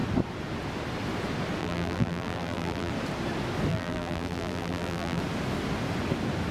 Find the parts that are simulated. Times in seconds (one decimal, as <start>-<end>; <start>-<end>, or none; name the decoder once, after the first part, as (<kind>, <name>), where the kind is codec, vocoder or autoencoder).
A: 1.6-2.9 (vocoder, BigVGAN v2); 3.7-5.2